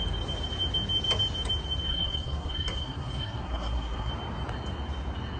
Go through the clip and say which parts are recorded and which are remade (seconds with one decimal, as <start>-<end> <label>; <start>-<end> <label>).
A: 0.0-1.9 recorded; 1.9-4.1 remade; 4.1-5.4 recorded

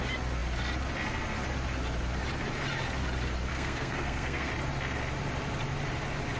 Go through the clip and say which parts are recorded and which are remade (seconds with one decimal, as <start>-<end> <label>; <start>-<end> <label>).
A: 0.0-3.5 recorded; 3.5-4.5 remade; 4.5-6.4 recorded